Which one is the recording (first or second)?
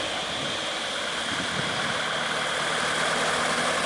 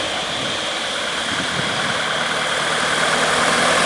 first